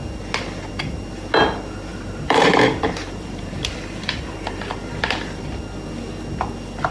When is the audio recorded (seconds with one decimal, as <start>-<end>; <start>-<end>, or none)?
0.0-1.9; 5.4-6.9